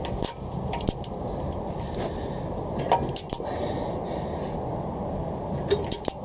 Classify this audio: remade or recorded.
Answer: recorded